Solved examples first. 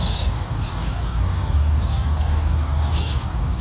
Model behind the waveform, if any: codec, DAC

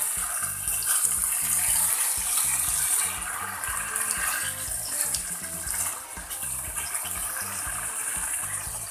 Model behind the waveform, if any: none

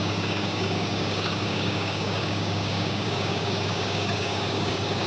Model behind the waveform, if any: codec, DAC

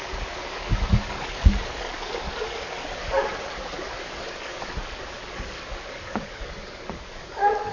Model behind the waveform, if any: codec, DAC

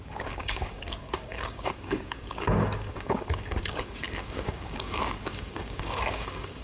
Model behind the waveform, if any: codec, DAC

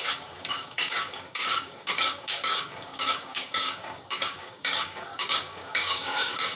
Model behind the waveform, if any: codec, DAC